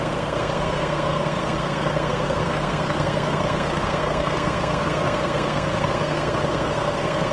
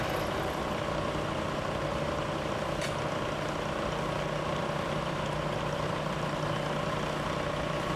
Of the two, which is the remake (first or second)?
first